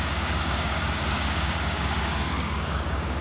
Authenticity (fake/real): fake